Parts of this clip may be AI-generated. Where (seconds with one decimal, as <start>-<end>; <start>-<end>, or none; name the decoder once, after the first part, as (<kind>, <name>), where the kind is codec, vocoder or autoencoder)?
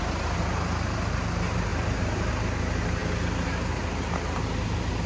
1.7-2.3 (vocoder, BigVGAN v2)